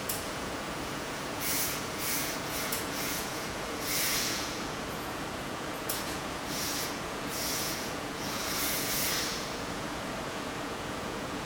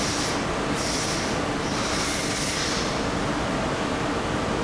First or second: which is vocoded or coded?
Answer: first